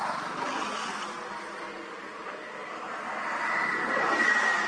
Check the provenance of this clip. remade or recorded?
recorded